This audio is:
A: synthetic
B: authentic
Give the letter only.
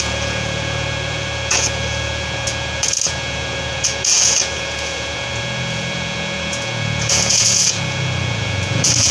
A